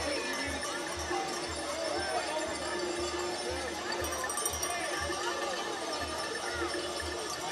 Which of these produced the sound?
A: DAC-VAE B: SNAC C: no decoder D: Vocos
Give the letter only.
C